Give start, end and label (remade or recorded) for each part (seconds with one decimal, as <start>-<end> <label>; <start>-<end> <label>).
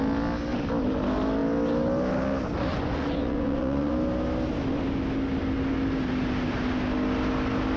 0.0-2.7 recorded; 2.7-3.9 remade; 3.9-7.8 recorded